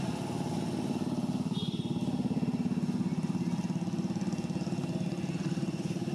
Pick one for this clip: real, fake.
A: real